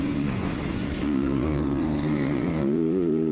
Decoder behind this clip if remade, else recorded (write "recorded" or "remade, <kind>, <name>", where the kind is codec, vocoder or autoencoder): remade, vocoder, Vocos